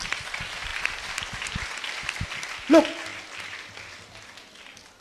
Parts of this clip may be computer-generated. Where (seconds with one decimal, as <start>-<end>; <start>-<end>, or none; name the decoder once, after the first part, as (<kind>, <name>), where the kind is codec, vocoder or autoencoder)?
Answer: none